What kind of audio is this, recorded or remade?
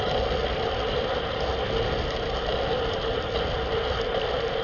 recorded